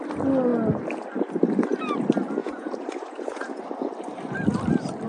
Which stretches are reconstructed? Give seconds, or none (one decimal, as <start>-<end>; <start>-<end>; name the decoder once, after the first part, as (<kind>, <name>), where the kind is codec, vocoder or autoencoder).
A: 2.4-3.6 (vocoder, Vocos)